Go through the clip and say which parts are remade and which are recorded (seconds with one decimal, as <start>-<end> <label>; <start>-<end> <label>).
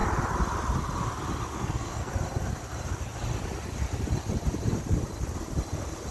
0.0-1.5 recorded; 1.5-2.1 remade; 2.1-6.1 recorded